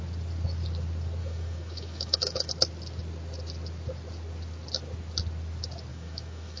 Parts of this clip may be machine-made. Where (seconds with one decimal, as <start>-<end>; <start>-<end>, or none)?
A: 1.2-2.5; 5.9-6.6